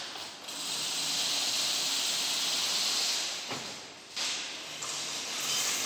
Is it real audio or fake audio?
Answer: real